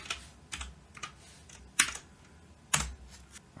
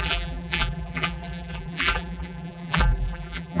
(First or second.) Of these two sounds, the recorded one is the first